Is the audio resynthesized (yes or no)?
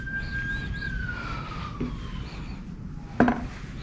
no